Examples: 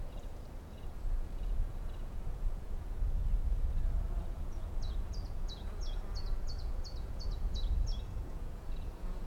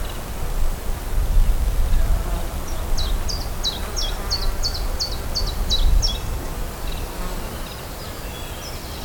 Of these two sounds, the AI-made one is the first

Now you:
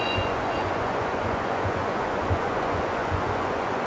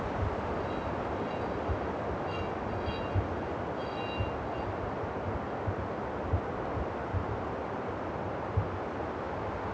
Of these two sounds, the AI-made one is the first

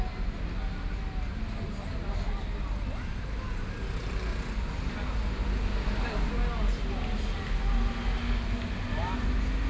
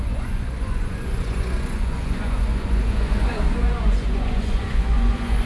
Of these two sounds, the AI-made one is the second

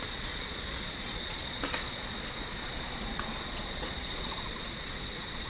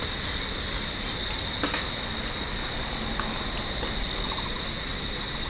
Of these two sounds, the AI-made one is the first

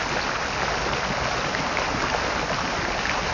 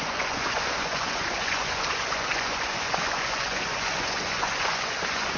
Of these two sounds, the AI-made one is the second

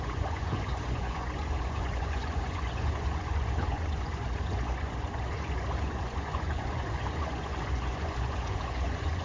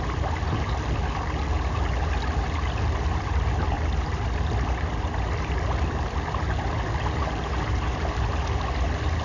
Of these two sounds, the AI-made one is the first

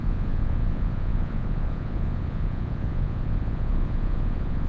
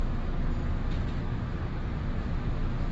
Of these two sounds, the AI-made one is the first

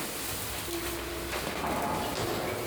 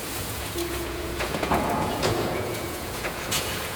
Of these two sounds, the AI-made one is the second